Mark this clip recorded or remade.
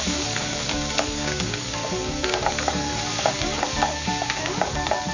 remade